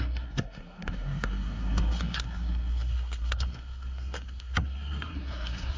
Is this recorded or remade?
remade